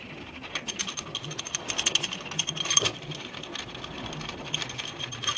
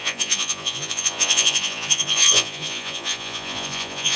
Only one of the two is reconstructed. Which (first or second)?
second